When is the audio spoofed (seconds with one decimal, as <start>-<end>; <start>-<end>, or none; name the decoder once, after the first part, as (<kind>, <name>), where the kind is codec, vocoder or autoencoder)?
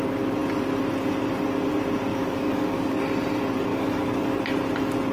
2.1-3.0 (codec, DAC); 3.7-4.4